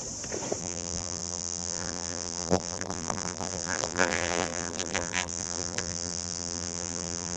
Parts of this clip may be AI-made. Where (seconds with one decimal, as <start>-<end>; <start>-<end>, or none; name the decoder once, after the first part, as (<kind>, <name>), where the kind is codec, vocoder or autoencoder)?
0.6-7.4 (vocoder, BigVGAN v2)